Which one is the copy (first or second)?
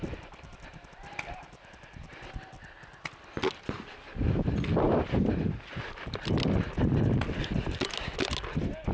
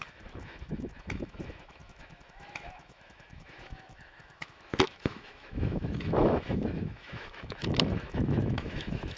second